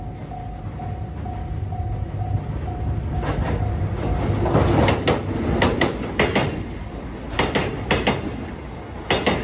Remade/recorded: recorded